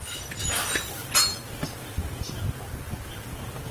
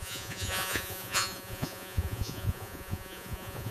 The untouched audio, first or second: first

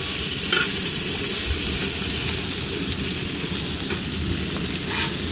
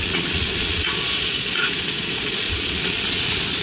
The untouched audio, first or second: first